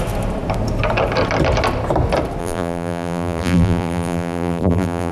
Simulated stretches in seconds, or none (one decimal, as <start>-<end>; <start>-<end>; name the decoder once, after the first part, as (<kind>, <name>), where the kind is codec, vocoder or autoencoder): 2.4-5.1 (vocoder, BigVGAN v2)

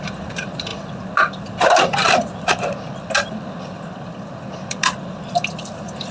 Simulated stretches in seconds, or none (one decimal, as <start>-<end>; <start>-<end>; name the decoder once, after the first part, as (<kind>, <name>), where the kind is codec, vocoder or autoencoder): 0.0-0.7 (vocoder, BigVGAN v2); 3.6-6.1

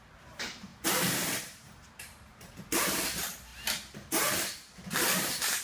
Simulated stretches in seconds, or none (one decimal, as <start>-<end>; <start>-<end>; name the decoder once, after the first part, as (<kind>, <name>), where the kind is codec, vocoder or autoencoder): 0.0-3.5 (vocoder, BigVGAN v2); 4.9-5.6

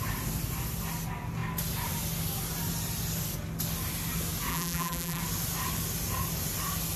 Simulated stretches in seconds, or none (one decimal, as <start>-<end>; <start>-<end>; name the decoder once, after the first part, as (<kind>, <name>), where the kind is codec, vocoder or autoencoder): 4.5-5.2 (vocoder, BigVGAN v2)

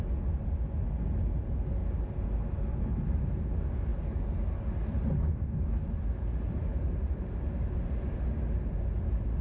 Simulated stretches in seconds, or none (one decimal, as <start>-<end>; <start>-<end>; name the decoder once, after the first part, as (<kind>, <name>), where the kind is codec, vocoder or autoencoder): 1.8-2.4 (vocoder, BigVGAN v2); 2.9-3.5; 6.7-7.3

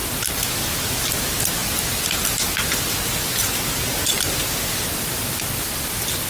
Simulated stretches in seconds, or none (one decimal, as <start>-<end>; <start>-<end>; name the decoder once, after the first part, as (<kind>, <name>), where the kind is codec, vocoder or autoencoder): none

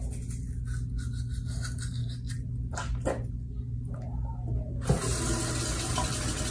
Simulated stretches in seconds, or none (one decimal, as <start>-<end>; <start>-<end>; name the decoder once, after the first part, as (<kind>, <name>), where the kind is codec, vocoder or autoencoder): none

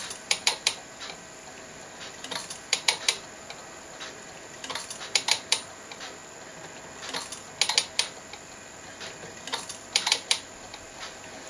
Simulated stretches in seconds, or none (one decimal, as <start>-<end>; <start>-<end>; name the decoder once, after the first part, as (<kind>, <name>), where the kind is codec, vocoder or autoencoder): 0.0-6.2 (vocoder, BigVGAN v2); 8.0-11.5